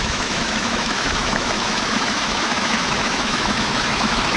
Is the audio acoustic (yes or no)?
no